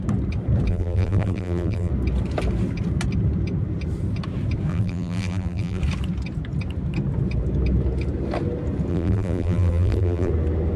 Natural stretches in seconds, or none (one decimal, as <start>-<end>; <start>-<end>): 0.0-0.7; 1.9-4.7; 5.8-8.9; 10.3-10.8